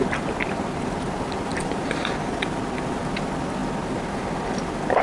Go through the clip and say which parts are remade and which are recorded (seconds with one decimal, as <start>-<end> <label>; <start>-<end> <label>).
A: 0.0-1.5 recorded; 1.5-2.1 remade; 2.1-5.0 recorded